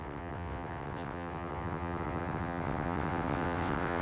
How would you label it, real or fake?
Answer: fake